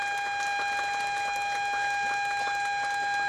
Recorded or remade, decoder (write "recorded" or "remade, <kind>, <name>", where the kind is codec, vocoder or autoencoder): recorded